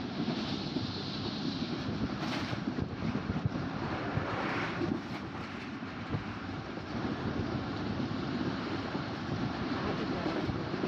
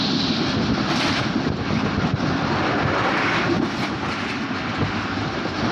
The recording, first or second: second